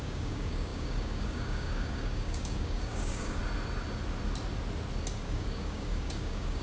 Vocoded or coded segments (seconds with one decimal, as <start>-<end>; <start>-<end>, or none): 0.0-3.4; 5.1-6.6